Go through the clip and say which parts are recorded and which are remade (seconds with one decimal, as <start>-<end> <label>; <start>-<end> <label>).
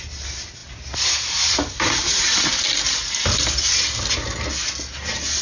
0.0-5.4 recorded